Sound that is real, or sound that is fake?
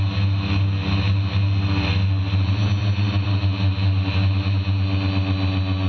real